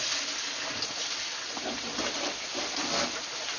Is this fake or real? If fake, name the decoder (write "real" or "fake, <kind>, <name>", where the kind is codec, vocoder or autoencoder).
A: real